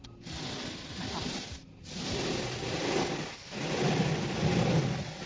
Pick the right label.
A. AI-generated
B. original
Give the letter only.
B